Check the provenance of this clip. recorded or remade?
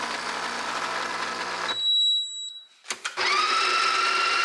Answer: recorded